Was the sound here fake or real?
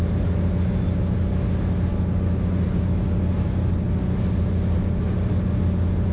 real